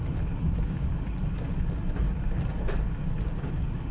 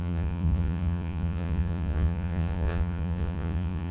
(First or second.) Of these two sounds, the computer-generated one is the second